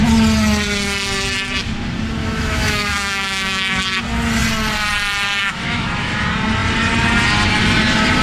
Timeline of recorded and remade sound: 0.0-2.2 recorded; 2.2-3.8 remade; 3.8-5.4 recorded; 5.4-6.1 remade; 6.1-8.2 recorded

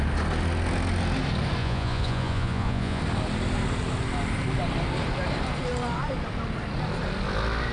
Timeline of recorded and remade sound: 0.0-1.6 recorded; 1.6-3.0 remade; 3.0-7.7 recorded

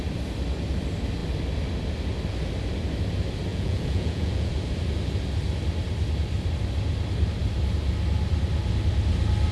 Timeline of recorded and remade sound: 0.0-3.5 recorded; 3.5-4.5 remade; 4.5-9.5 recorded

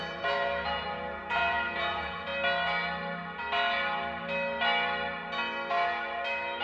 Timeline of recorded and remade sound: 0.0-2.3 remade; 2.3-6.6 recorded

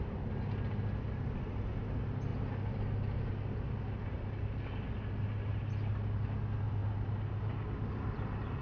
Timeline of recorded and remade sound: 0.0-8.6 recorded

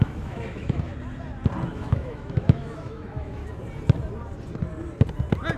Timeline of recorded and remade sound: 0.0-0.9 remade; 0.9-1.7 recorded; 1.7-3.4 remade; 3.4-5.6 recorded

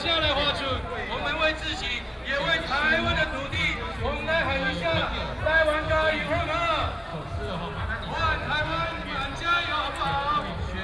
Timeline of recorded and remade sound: 0.0-10.8 recorded